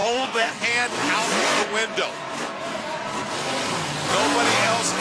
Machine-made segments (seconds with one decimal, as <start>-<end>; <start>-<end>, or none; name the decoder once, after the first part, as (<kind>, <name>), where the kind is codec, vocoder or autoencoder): 0.0-0.5 (codec, DAC)